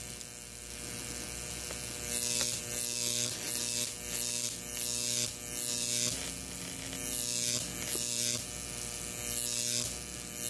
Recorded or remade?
recorded